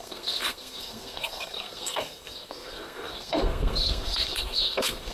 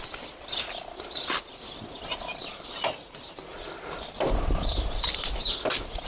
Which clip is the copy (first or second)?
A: first